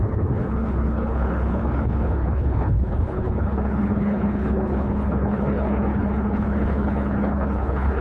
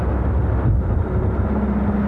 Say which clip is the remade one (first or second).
first